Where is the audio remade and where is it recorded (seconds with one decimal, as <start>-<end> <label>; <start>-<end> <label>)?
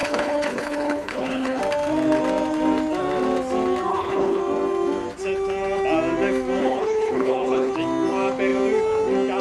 0.0-1.6 remade; 1.6-3.9 recorded; 3.9-4.4 remade; 4.4-6.6 recorded; 6.6-7.7 remade; 7.7-9.4 recorded